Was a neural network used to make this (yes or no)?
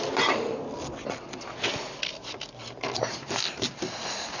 no